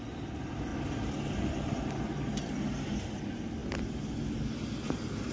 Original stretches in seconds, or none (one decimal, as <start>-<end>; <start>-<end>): 0.0-5.3